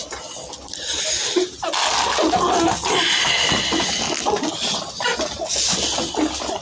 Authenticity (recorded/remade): recorded